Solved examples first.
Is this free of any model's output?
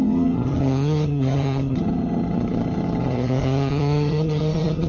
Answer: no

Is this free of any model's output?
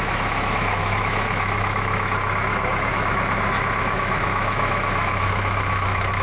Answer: no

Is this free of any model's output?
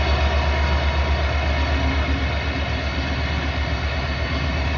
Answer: yes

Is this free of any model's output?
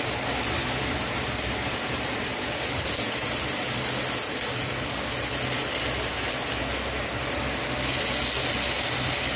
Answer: yes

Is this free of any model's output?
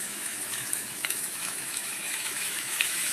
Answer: no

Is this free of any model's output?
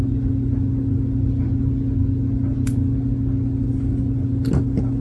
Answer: yes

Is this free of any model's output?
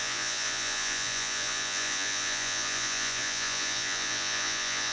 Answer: no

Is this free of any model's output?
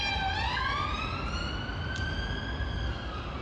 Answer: yes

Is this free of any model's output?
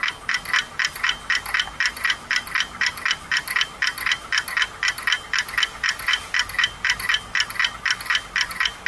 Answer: yes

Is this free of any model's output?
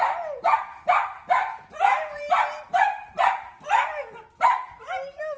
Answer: yes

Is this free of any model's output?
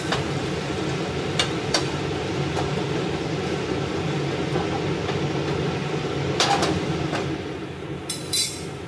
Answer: no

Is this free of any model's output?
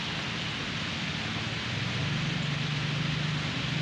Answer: yes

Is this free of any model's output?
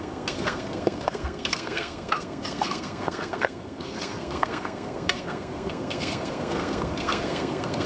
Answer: no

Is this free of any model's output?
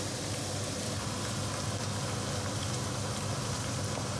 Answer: yes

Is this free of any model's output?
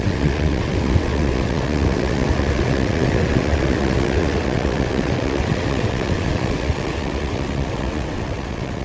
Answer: no